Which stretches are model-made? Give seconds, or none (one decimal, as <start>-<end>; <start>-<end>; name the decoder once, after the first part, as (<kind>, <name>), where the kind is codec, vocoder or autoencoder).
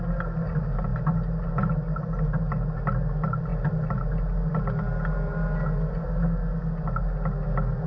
none